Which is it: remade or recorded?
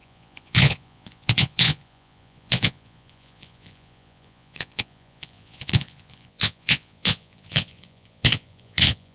remade